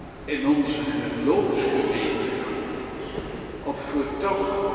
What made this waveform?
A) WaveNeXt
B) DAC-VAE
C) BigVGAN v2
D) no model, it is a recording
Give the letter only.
D